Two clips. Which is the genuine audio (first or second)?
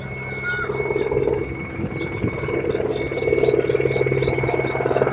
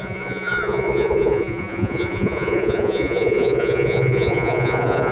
first